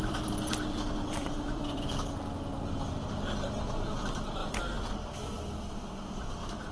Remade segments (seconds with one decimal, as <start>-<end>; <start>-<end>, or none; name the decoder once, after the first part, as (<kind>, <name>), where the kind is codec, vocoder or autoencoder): 0.0-6.7 (vocoder, BigVGAN v2)